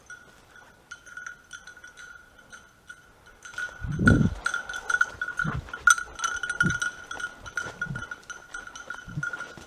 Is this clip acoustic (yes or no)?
yes